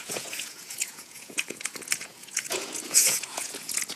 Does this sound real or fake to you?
fake